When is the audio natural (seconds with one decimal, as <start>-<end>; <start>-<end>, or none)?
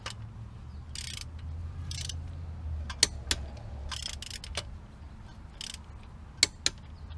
0.0-1.6; 2.3-7.2